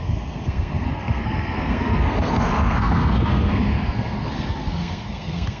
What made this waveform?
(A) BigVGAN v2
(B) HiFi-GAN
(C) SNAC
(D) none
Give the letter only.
C